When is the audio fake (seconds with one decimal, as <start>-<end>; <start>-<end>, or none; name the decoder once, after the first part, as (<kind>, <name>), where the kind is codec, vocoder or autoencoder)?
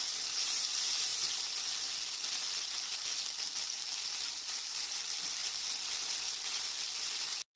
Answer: none